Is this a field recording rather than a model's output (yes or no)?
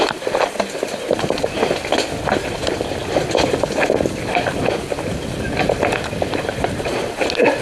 yes